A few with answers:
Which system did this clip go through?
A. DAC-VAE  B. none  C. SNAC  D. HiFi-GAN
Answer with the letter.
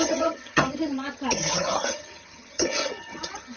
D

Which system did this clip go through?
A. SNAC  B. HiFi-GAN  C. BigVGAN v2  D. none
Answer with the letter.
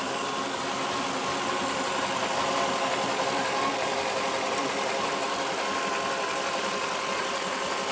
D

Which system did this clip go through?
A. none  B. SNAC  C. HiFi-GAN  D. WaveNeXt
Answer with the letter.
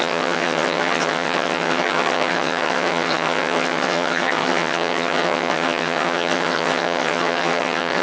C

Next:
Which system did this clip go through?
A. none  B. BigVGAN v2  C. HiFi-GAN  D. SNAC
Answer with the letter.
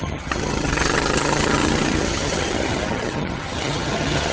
C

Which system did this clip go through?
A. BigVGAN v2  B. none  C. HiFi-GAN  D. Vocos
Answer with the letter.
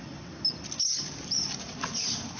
B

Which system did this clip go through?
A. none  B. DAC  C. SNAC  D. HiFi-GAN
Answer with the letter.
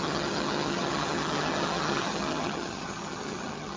D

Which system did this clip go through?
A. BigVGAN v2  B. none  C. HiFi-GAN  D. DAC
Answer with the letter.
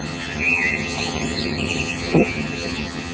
C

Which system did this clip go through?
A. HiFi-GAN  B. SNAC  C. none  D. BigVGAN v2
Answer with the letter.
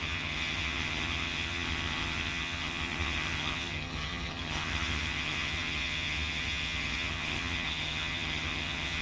A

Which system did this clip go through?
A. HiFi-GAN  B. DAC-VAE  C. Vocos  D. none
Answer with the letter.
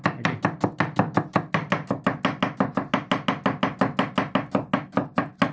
D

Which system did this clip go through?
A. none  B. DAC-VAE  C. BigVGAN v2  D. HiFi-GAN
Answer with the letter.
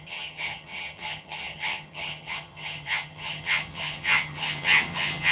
D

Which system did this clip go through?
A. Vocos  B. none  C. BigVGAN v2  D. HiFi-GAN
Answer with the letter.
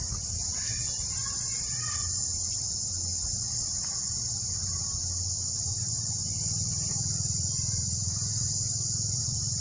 B